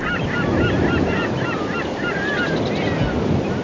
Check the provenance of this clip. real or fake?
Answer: real